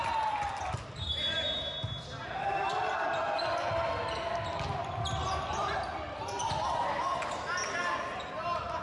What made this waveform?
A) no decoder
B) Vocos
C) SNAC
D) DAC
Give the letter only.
A